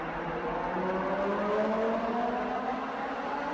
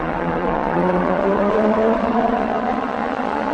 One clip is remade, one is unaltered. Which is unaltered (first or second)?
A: first